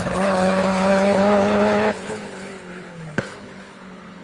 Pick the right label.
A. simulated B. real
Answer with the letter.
A